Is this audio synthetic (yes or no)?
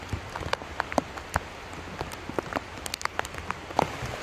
no